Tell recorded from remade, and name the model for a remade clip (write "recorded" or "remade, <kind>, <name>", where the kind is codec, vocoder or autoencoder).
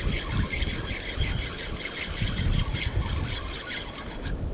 recorded